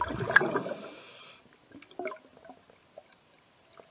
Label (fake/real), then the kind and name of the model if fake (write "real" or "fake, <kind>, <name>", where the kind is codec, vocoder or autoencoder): real